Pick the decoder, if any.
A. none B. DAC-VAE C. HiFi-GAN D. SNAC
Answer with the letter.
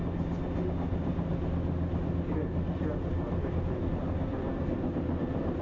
A